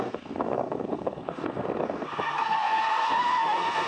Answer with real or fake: fake